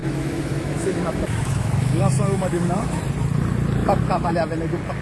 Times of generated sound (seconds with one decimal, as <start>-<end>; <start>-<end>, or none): 0.0-3.0; 3.8-4.3

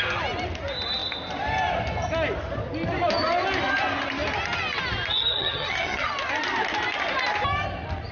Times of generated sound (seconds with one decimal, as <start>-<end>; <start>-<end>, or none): 5.2-6.1